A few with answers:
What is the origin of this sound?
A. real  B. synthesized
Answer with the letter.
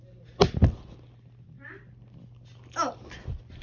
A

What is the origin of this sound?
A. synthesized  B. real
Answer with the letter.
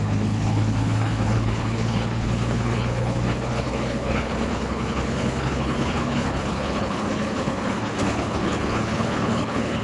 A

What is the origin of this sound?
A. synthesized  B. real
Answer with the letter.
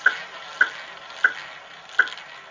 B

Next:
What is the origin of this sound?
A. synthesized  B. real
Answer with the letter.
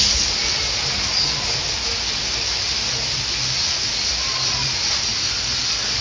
B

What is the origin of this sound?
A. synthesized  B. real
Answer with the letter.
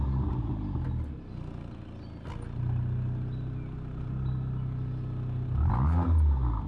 B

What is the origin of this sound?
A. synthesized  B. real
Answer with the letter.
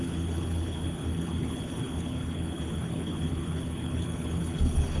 A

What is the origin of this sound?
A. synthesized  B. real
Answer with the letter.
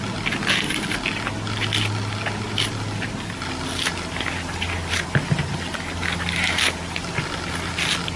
B